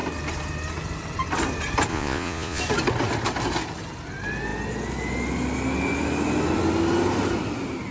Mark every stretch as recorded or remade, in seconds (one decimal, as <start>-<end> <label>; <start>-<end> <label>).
0.0-1.9 recorded; 1.9-2.6 remade; 2.6-7.9 recorded